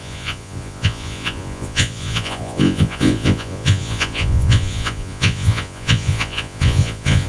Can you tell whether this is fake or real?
fake